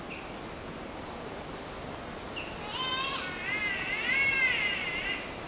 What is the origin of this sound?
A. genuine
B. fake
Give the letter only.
A